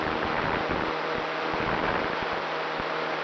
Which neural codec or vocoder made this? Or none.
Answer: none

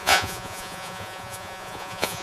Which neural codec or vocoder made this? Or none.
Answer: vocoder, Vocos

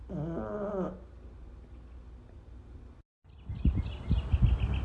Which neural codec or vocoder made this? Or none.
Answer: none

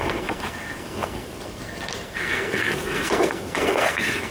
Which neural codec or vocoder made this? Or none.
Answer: codec, SNAC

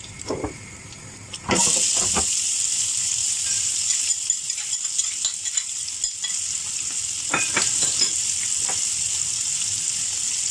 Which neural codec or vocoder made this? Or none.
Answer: none